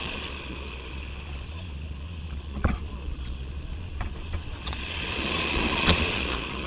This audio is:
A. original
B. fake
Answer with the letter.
B